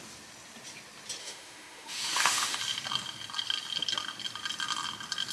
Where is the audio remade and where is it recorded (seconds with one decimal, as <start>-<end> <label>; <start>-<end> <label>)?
0.0-1.2 recorded; 1.2-2.6 remade; 2.6-5.3 recorded